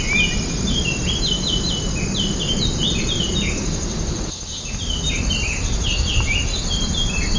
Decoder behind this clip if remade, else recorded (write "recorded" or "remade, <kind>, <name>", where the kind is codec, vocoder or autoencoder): recorded